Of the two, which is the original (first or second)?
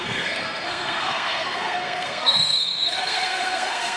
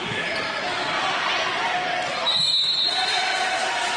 second